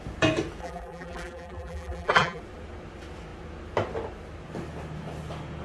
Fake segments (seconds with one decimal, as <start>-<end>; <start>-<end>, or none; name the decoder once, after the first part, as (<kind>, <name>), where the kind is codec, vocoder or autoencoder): 0.6-2.4 (vocoder, BigVGAN v2)